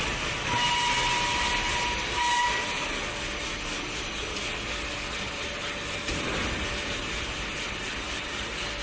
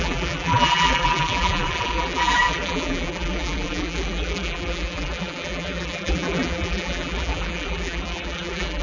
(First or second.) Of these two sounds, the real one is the first